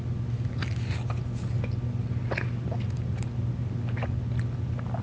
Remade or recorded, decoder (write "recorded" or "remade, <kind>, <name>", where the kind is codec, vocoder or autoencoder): recorded